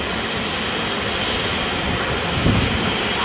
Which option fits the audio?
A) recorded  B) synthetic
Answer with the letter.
A